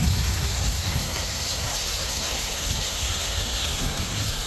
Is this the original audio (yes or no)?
no